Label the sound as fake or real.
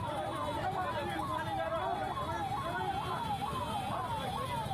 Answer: real